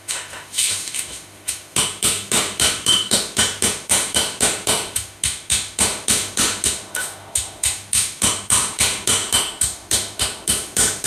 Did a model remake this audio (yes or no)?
yes